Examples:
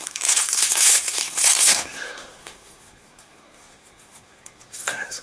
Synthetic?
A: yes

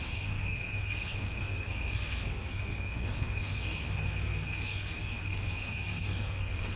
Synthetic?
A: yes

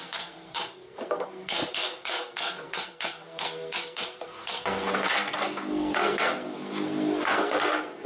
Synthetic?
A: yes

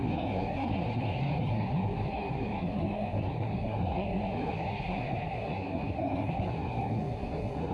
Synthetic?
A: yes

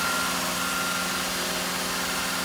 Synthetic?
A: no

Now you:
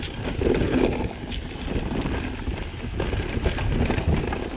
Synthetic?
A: no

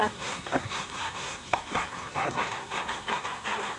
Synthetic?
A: yes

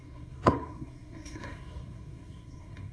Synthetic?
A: yes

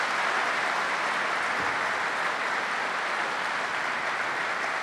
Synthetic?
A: no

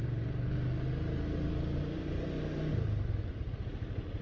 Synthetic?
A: no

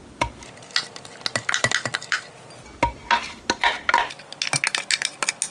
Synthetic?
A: no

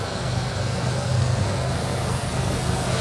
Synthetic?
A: yes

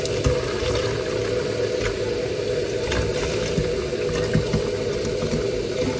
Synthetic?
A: no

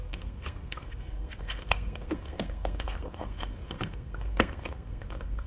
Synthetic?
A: yes